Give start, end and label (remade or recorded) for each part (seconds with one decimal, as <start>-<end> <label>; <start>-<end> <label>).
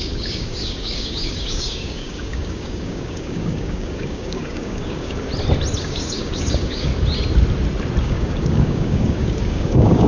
0.0-5.3 remade; 5.3-5.8 recorded; 5.8-6.9 remade; 6.9-8.0 recorded; 8.0-10.1 remade